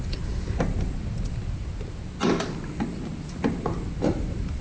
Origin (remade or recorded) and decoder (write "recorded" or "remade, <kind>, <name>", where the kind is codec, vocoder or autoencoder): recorded